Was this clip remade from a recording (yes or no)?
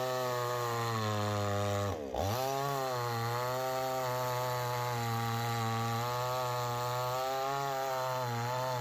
no